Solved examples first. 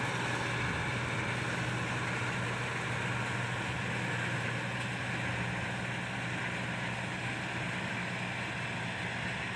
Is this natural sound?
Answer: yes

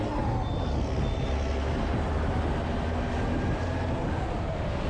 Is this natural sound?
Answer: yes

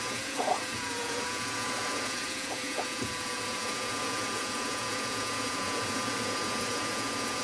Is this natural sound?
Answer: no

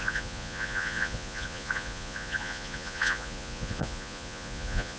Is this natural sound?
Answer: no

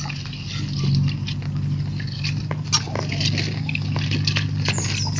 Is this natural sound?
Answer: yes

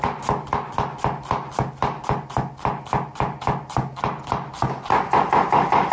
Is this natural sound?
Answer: yes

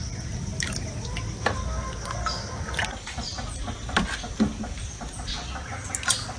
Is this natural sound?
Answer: yes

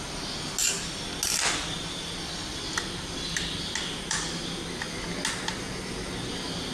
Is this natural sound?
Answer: yes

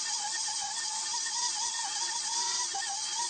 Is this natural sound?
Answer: no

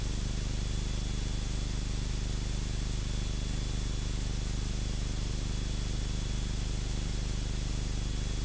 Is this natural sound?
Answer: yes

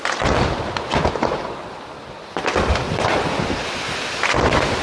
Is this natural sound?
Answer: yes